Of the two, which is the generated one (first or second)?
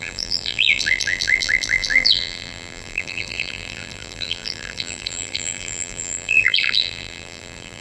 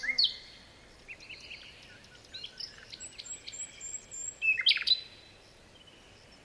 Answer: first